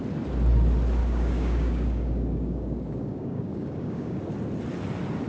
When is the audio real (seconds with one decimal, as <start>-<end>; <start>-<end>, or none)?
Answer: 0.0-1.0; 4.2-5.3